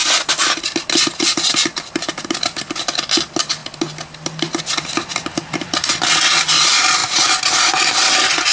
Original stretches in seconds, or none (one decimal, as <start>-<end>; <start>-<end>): 0.0-5.1; 5.7-8.5